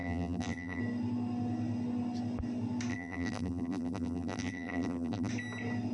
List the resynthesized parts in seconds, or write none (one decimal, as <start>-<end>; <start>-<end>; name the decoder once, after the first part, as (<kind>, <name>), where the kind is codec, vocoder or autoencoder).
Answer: 0.0-0.8 (vocoder, BigVGAN v2); 2.9-5.3